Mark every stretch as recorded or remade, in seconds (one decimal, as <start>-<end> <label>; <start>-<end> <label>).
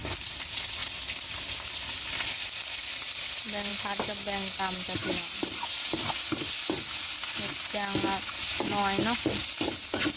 0.0-10.2 recorded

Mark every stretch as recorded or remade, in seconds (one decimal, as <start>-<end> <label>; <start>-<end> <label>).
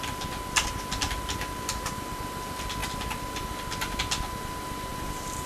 0.0-5.5 recorded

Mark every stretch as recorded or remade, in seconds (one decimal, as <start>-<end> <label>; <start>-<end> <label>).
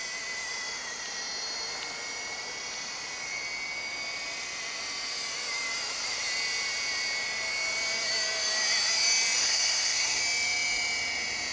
0.0-9.4 recorded; 9.4-10.2 remade; 10.2-11.5 recorded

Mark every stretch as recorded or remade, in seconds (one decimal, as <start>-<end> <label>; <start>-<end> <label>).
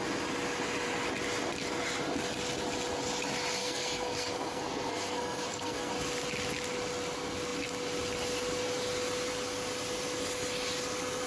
0.0-3.6 recorded; 3.6-5.9 remade; 5.9-11.3 recorded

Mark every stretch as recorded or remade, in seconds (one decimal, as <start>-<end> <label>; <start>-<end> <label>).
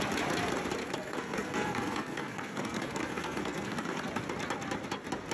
0.0-0.8 recorded; 0.8-4.0 remade; 4.0-5.3 recorded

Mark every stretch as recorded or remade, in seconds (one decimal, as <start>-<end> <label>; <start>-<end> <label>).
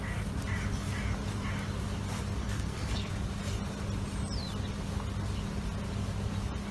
0.0-2.4 recorded; 2.4-3.1 remade; 3.1-6.7 recorded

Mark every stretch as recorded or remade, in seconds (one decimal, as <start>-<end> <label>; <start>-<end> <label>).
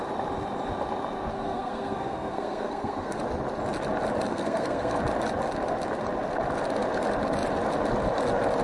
0.0-1.3 recorded; 1.3-3.2 remade; 3.2-4.3 recorded; 4.3-5.0 remade; 5.0-8.6 recorded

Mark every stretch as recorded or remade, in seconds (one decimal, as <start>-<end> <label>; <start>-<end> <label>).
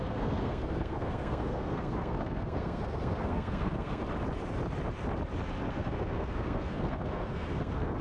0.0-4.0 remade; 4.0-5.7 recorded; 5.7-8.0 remade